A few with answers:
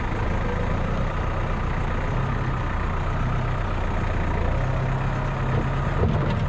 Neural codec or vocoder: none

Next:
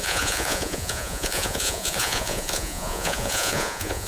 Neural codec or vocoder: vocoder, Vocos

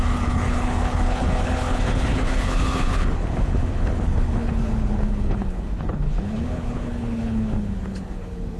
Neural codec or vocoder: codec, HILCodec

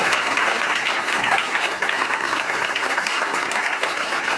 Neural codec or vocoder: codec, SNAC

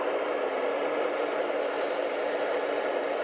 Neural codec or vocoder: none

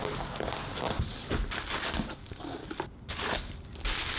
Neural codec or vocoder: none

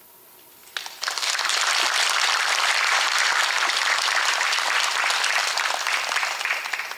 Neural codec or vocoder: vocoder, BigVGAN v2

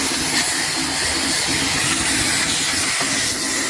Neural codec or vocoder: none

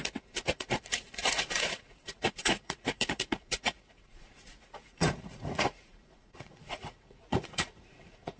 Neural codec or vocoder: vocoder, Vocos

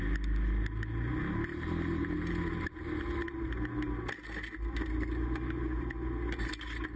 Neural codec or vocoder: none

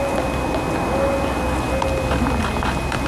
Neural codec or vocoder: none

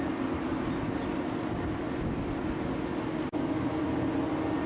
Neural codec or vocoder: none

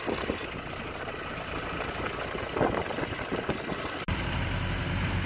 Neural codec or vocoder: none